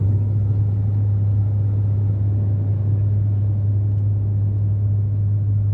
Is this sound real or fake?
real